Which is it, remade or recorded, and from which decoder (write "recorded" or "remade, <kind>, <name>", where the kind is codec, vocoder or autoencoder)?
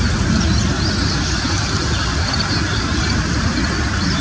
remade, vocoder, BigVGAN v2